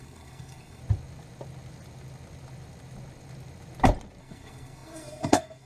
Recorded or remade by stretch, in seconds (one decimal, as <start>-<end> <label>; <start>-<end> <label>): 0.0-0.8 remade; 0.8-4.2 recorded; 4.2-5.7 remade